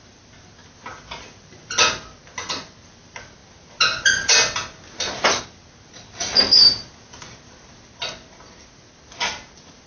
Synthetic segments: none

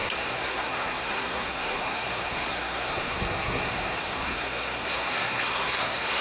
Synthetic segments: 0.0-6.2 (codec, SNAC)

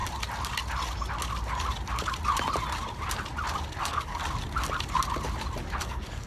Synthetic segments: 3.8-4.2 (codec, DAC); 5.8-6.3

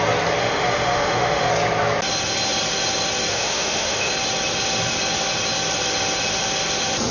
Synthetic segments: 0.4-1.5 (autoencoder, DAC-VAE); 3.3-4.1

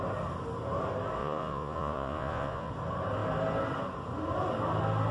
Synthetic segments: 1.2-2.7 (vocoder, Vocos)